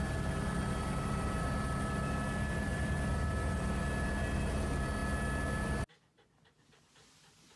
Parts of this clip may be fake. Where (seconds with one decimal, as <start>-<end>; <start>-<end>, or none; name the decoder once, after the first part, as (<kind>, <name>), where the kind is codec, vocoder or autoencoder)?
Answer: 2.7-3.3 (vocoder, BigVGAN v2)